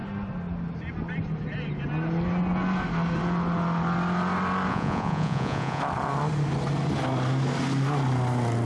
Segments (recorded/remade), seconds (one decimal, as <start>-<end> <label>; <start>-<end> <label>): 0.0-4.7 recorded; 4.7-5.8 remade; 5.8-8.6 recorded